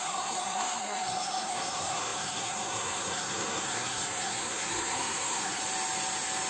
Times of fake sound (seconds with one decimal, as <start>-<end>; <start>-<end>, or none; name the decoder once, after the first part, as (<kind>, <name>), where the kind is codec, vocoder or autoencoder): 0.0-5.6 (codec, SNAC)